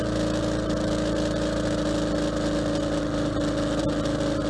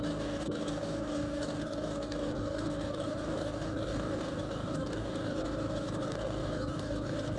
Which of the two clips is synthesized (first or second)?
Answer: second